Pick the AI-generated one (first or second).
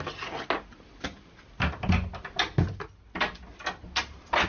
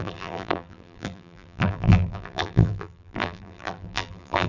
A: second